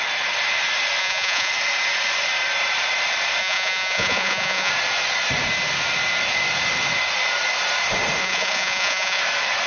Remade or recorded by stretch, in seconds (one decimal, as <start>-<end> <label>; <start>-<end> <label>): 0.0-1.0 recorded; 1.0-1.5 remade; 1.5-3.4 recorded; 3.4-4.7 remade; 4.7-8.2 recorded; 8.2-9.2 remade; 9.2-9.7 recorded